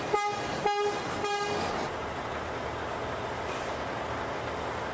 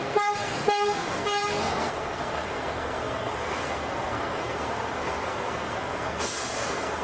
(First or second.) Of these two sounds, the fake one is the second